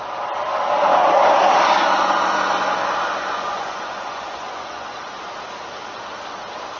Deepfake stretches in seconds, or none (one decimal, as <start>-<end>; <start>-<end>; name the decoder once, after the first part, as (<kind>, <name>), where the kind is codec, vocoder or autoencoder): 3.2-5.2 (vocoder, Vocos)